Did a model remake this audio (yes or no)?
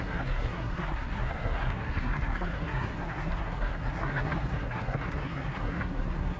yes